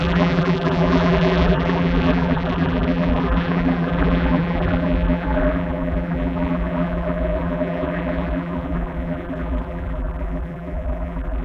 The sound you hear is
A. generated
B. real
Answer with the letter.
A